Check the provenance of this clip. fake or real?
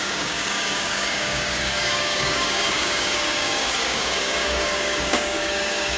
fake